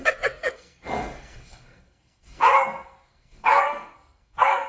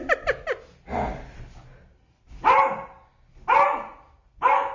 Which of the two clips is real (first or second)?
second